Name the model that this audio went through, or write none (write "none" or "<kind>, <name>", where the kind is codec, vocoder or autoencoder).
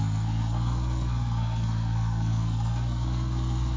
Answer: codec, SNAC